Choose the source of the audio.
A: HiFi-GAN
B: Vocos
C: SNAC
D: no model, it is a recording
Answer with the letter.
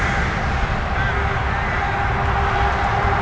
D